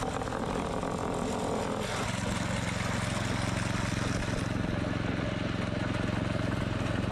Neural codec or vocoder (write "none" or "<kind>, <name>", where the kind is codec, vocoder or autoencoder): none